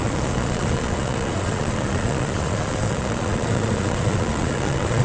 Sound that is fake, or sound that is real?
fake